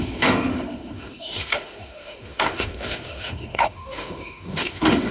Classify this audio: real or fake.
fake